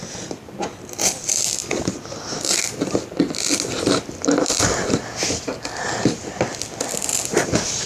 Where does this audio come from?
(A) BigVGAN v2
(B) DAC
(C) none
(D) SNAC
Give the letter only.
C